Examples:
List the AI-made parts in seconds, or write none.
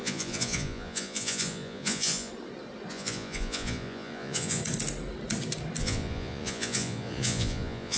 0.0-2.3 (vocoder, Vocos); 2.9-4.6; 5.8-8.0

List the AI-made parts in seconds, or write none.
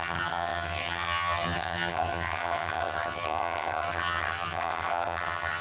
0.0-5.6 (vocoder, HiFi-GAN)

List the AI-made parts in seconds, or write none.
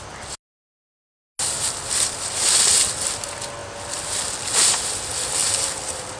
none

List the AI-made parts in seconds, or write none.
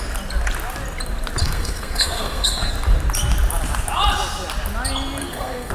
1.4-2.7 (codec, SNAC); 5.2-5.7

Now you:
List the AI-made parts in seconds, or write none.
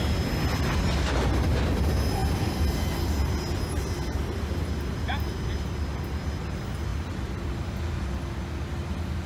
6.9-7.5 (vocoder, BigVGAN v2)